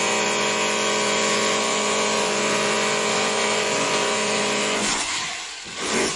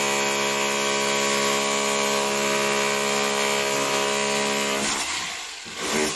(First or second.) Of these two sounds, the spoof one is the first